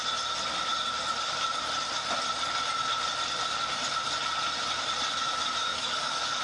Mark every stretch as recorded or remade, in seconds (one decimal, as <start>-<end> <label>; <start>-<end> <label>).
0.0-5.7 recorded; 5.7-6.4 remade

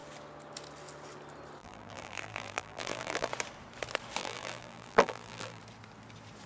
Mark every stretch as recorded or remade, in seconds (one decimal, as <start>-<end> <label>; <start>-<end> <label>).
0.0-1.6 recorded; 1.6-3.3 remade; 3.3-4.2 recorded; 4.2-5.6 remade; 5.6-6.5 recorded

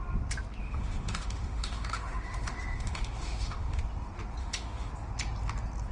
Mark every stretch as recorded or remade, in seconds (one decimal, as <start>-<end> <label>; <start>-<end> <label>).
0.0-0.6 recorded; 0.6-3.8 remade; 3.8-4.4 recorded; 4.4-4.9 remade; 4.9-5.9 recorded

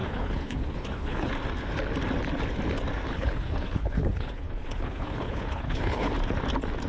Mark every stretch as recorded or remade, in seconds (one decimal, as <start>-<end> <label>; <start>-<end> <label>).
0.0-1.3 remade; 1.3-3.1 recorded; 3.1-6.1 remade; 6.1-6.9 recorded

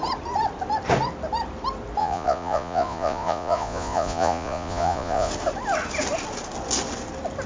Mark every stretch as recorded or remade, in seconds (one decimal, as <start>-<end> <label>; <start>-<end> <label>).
0.0-2.0 recorded; 2.0-5.3 remade; 5.3-7.5 recorded

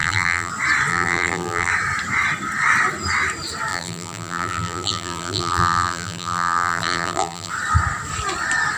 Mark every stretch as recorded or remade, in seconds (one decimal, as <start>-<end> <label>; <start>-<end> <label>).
0.0-0.5 remade; 0.5-0.9 recorded; 0.9-1.7 remade; 1.7-3.7 recorded; 3.7-7.5 remade; 7.5-8.8 recorded

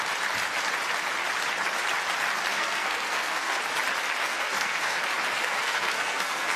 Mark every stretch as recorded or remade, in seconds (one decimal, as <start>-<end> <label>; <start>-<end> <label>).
0.0-2.5 recorded; 2.5-3.6 remade; 3.6-4.2 recorded; 4.2-5.0 remade; 5.0-5.4 recorded; 5.4-6.6 remade